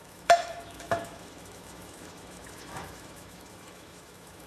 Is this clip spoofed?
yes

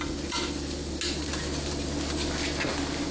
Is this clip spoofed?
no